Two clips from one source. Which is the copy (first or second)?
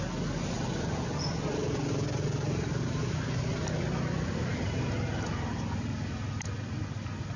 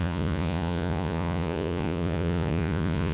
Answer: second